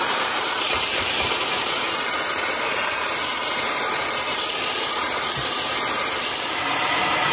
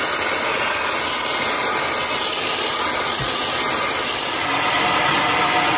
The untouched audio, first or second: second